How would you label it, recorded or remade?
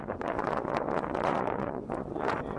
remade